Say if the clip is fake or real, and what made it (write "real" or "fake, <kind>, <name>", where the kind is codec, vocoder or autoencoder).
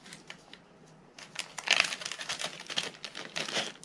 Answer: real